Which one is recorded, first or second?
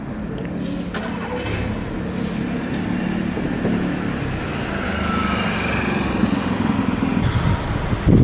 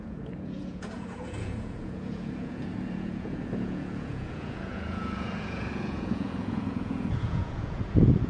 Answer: first